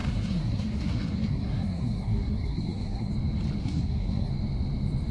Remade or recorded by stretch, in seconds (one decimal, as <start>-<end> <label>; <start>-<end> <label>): 0.0-3.1 remade; 3.1-3.6 recorded; 3.6-4.3 remade; 4.3-5.1 recorded